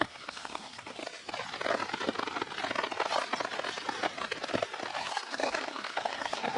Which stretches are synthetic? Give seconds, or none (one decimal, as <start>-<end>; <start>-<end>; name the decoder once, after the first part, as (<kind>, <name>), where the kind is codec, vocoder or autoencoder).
0.0-1.0 (codec, SNAC); 5.0-6.6